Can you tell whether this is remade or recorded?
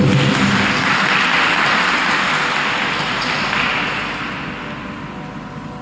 recorded